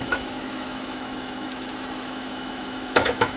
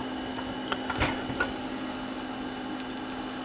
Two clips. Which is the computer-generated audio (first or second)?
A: first